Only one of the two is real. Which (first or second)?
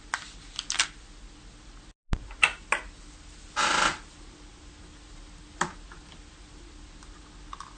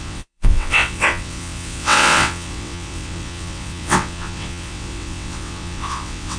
first